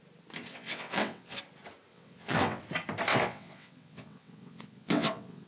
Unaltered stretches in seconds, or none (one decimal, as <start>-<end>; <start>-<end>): 0.0-0.5; 1.4-1.9; 2.6-3.1

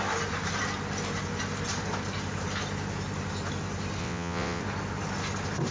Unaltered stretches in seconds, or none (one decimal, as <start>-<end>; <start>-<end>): 0.0-4.0; 4.6-5.7

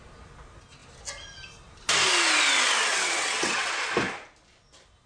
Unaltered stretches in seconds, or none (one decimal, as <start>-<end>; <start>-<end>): 0.0-2.9; 3.7-5.1

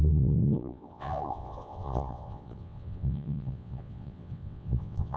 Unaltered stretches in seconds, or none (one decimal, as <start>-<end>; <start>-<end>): none

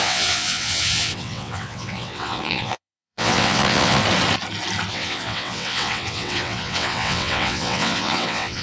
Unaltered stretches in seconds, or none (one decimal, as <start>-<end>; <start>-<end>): 4.0-4.9